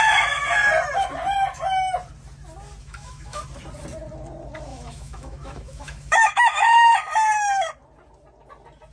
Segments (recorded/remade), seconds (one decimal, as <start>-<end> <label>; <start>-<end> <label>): 0.0-2.8 recorded; 2.8-3.4 remade; 3.4-4.7 recorded; 4.7-6.9 remade; 6.9-8.9 recorded